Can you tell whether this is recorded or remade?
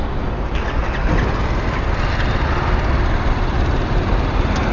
recorded